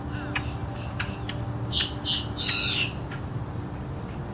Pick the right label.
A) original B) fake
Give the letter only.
A